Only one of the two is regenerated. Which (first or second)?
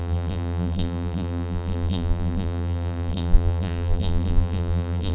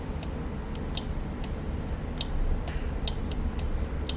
first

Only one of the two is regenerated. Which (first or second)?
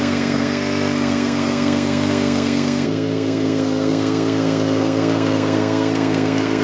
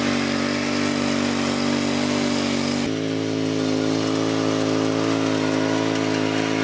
first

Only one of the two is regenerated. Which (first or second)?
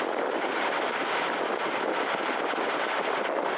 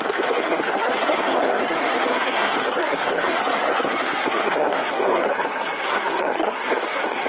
second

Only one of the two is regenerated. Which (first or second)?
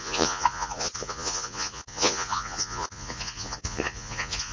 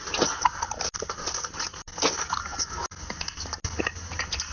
first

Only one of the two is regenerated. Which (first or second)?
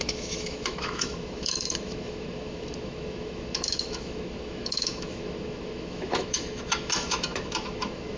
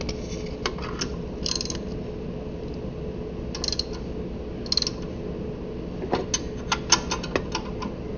first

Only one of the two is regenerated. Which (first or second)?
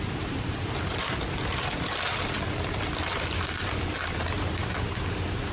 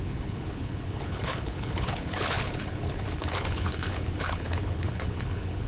second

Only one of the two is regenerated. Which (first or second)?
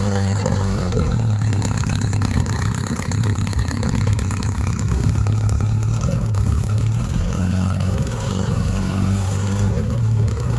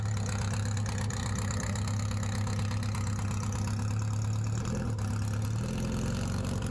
first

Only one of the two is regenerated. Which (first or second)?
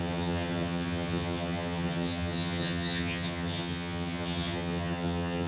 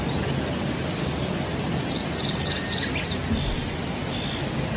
first